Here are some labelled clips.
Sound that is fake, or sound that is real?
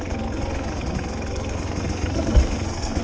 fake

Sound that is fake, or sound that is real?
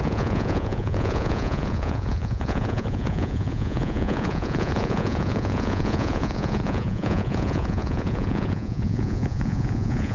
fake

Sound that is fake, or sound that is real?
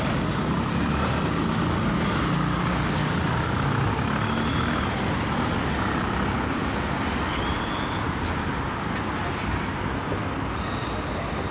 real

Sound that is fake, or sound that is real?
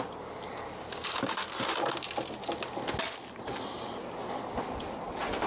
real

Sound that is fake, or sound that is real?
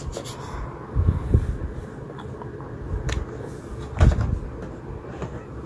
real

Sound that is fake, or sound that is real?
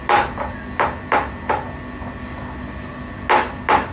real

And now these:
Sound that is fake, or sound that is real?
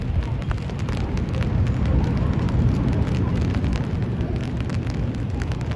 real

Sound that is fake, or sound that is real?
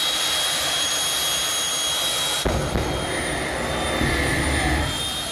real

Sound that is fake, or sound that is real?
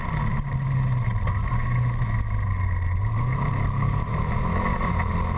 real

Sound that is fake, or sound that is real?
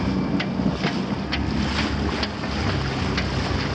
real